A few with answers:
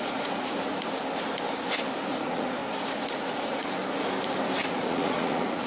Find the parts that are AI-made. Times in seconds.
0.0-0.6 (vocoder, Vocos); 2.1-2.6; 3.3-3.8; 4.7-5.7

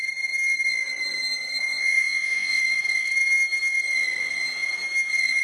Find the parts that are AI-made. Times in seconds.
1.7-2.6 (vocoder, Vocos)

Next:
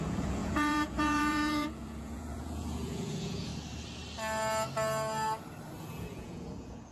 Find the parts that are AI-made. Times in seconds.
0.0-3.5 (vocoder, Vocos); 5.8-6.9